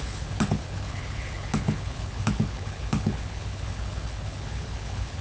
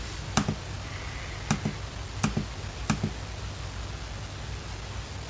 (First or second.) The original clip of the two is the second